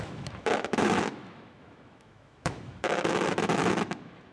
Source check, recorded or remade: remade